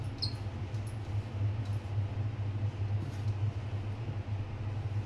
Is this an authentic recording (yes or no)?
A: yes